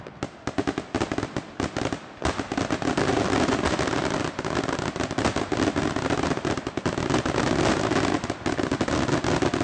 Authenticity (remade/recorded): recorded